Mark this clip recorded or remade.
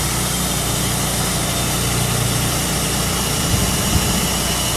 recorded